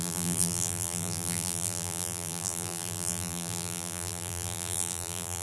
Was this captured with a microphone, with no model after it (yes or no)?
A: no